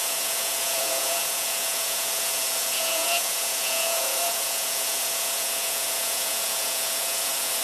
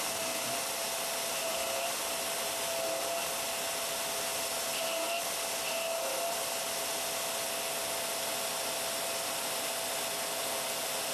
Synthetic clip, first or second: first